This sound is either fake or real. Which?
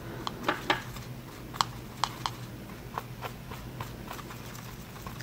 real